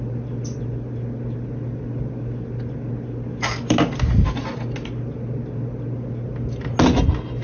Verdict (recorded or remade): recorded